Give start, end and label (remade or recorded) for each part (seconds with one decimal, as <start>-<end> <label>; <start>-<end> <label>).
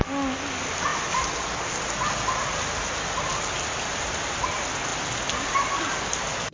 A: 0.0-6.5 recorded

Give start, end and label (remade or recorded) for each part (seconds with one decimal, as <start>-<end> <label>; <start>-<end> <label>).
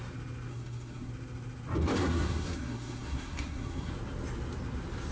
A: 0.0-0.5 recorded; 0.5-1.1 remade; 1.1-2.0 recorded; 2.0-3.9 remade; 3.9-5.1 recorded